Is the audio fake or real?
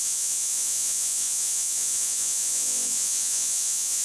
fake